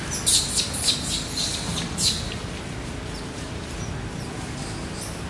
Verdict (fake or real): real